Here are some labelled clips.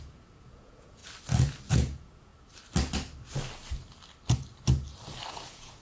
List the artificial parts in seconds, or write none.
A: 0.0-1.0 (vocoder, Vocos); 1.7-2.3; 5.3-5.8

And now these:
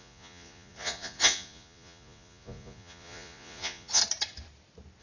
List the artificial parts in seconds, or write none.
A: 0.0-4.0 (vocoder, Vocos)